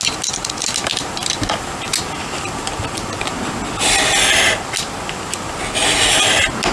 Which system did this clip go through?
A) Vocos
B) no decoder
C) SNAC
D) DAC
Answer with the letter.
B